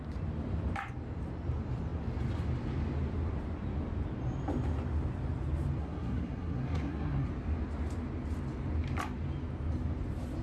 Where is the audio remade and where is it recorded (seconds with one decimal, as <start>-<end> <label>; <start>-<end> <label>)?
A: 0.0-5.8 recorded; 5.8-7.3 remade; 7.3-10.4 recorded